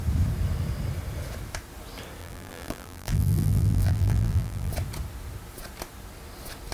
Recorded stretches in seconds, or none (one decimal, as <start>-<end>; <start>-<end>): 0.0-2.2; 4.7-6.7